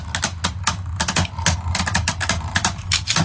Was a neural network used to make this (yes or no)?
no